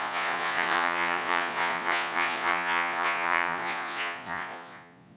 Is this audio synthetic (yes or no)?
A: yes